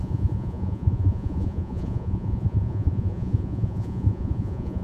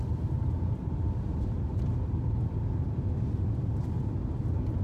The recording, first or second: second